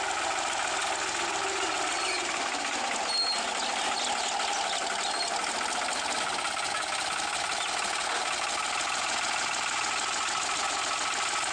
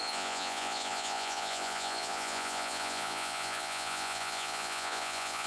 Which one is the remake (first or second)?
second